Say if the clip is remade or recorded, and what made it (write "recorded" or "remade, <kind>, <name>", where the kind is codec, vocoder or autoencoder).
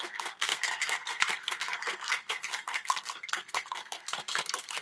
remade, codec, SNAC